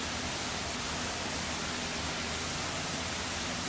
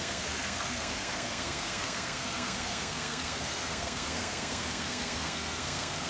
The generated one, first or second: second